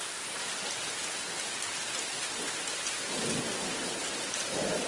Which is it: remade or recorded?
recorded